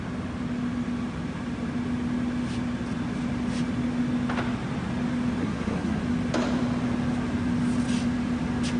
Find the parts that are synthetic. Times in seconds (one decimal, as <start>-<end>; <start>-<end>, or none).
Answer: 5.4-6.0